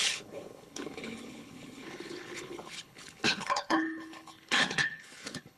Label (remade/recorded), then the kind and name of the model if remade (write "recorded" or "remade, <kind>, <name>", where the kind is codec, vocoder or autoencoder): remade, codec, HILCodec